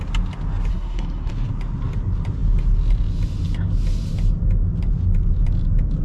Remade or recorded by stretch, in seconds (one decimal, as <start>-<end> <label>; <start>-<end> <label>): 0.0-0.7 recorded; 0.7-1.3 remade; 1.3-6.0 recorded